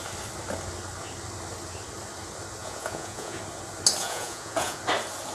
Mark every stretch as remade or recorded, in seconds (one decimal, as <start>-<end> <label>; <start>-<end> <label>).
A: 0.0-2.6 recorded; 2.6-3.4 remade; 3.4-4.0 recorded; 4.0-4.8 remade; 4.8-5.3 recorded